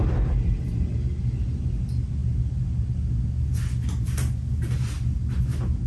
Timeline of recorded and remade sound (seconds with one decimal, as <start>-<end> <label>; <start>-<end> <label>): 0.0-5.9 recorded